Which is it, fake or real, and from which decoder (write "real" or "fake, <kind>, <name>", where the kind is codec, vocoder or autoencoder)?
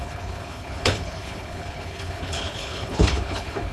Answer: fake, codec, HILCodec